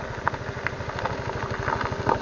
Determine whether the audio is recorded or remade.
recorded